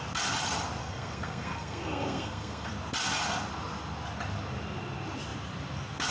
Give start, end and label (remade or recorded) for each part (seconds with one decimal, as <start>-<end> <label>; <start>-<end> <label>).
0.0-0.8 recorded; 0.8-2.7 remade; 2.7-6.1 recorded